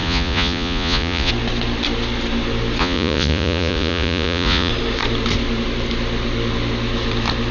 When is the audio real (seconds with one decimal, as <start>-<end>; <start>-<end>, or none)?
1.3-2.8; 4.7-7.5